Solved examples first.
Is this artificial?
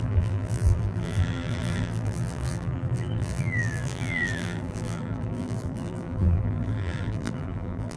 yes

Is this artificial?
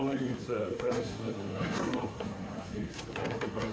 yes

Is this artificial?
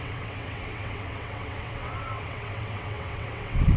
yes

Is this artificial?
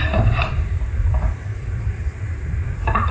yes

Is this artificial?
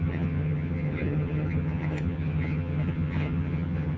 yes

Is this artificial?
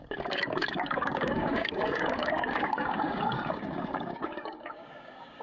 yes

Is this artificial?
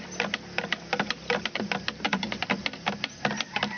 no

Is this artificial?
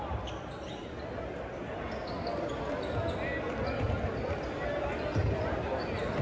no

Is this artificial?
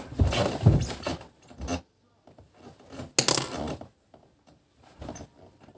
no